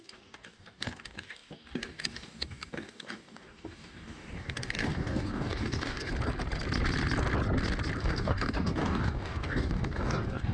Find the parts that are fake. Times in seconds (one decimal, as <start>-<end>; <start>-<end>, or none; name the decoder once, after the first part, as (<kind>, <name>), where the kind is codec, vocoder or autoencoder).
0.0-6.1 (codec, DAC); 8.0-10.5